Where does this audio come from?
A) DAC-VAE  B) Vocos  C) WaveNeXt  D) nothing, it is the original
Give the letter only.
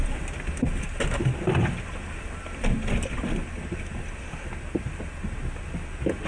D